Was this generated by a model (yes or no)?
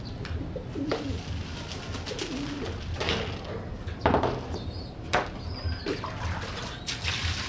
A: no